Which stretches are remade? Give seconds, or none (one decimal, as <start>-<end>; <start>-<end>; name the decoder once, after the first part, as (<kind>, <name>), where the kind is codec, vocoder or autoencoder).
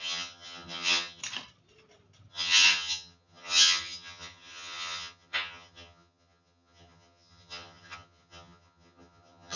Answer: 0.0-1.2 (vocoder, HiFi-GAN); 2.3-9.6